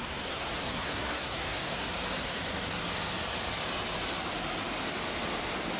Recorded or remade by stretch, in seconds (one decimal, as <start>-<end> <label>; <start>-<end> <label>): 0.0-1.9 remade; 1.9-5.8 recorded